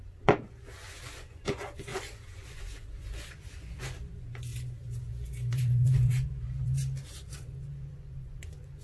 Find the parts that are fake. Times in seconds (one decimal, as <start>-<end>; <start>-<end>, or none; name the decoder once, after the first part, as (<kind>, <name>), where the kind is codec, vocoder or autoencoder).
0.0-6.8 (vocoder, Vocos); 7.3-8.8